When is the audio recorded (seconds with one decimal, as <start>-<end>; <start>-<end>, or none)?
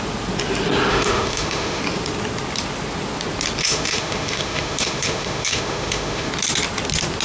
0.0-0.9; 1.8-3.6; 6.3-7.2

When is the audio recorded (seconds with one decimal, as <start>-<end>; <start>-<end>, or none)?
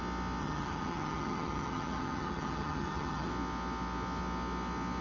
0.0-0.4; 3.3-5.0